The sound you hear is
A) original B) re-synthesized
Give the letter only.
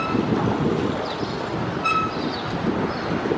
A